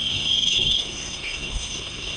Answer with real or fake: fake